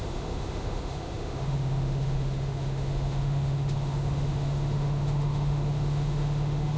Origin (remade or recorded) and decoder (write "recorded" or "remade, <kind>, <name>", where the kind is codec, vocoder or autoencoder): remade, autoencoder, DAC-VAE